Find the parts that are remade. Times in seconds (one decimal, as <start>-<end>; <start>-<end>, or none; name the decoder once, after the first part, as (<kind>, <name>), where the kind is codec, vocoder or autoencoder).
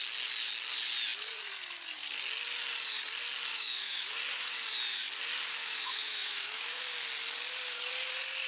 3.5-4.1 (autoencoder, DAC-VAE); 5.6-6.8